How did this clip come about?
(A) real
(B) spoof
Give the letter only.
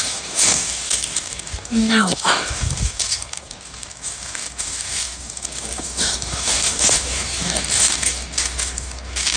B